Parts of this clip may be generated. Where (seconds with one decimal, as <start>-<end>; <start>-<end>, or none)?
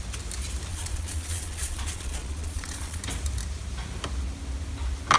0.7-3.0